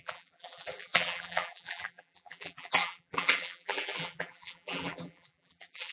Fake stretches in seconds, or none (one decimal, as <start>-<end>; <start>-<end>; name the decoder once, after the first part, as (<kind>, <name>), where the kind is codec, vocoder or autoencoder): 0.0-5.9 (vocoder, BigVGAN v2)